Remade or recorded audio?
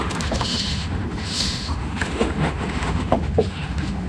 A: remade